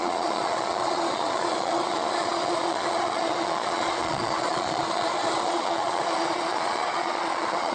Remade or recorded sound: remade